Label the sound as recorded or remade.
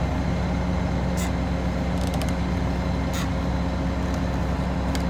recorded